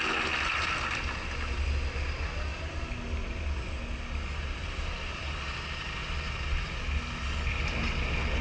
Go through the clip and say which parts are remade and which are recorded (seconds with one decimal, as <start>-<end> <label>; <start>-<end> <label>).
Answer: 0.0-8.4 recorded

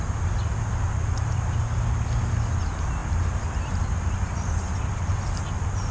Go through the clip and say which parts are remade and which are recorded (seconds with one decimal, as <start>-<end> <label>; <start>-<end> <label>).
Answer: 0.0-5.9 recorded

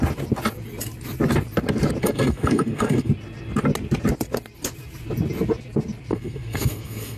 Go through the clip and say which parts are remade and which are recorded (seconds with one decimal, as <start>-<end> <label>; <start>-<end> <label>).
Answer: 0.0-2.0 recorded; 2.0-3.1 remade; 3.1-6.1 recorded; 6.1-7.2 remade

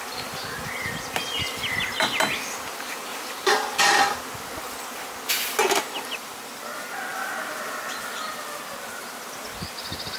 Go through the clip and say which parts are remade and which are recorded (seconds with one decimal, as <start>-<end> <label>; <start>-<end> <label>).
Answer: 0.0-3.1 recorded; 3.1-4.6 remade; 4.6-5.6 recorded; 5.6-6.3 remade; 6.3-7.1 recorded; 7.1-7.9 remade; 7.9-10.2 recorded

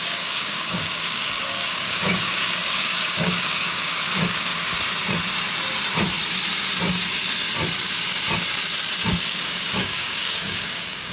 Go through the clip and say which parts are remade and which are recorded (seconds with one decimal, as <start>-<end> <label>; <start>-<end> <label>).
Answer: 0.0-4.5 remade; 4.5-9.2 recorded; 9.2-11.1 remade

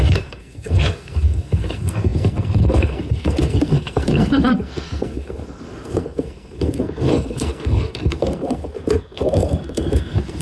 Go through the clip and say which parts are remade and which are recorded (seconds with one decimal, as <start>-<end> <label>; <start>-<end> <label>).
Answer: 0.0-10.4 remade